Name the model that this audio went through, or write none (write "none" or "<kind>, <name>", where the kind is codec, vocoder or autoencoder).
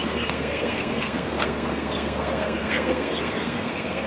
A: codec, SNAC